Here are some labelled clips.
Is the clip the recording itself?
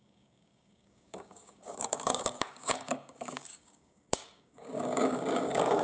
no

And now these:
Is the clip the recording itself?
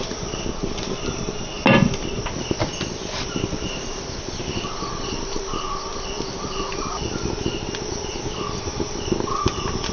yes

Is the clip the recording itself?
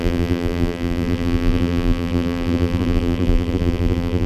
no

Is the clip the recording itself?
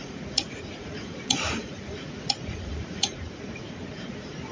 no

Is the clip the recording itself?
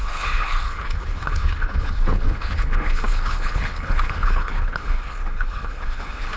no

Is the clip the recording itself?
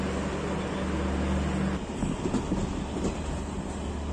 yes